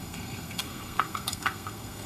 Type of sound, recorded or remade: remade